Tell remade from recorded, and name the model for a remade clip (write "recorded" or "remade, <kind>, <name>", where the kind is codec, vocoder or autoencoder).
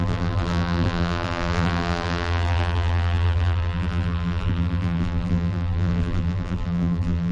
remade, vocoder, BigVGAN v2